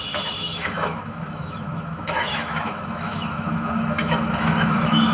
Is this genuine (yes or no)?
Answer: no